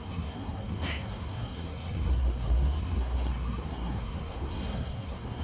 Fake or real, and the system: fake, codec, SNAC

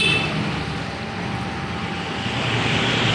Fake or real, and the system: real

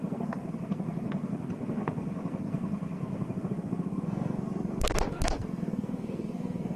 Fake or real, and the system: fake, codec, SNAC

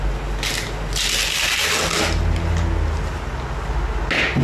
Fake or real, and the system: real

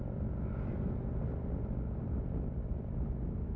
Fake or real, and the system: real